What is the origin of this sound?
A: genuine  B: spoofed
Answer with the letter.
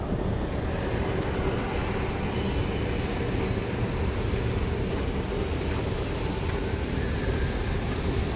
A